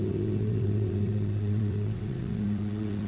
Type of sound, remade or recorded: remade